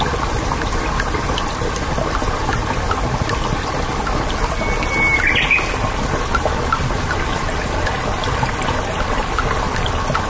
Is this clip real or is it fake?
real